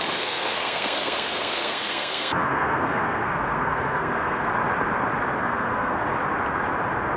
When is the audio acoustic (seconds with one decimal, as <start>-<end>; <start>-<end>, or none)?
4.5-5.4; 6.1-7.2